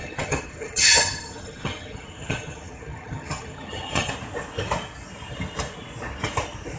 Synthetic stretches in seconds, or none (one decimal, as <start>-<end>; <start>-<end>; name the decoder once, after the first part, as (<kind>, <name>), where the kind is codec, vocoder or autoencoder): 0.0-4.1 (vocoder, HiFi-GAN)